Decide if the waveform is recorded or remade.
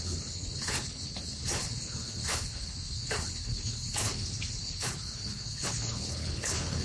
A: remade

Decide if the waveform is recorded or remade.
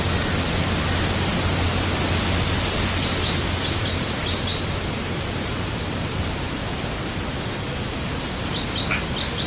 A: recorded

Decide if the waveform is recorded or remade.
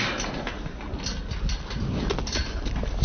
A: recorded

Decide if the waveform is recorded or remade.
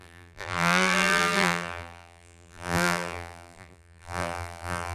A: remade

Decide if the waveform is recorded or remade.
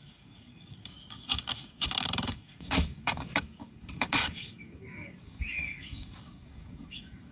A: remade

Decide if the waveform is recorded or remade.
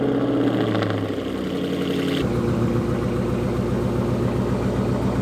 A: recorded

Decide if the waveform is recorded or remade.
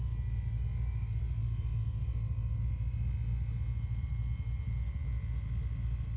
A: recorded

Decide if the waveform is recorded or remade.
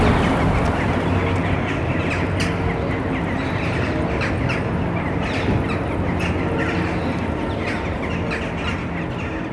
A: recorded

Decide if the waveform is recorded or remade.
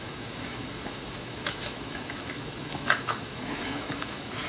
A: remade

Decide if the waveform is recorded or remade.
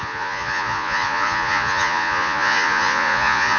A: remade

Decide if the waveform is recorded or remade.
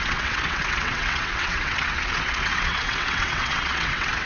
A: remade